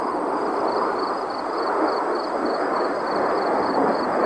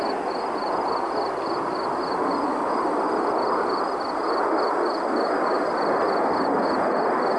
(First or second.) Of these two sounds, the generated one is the first